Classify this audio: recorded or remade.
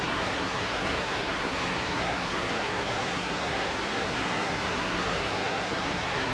remade